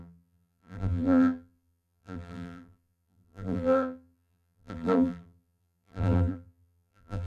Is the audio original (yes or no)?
no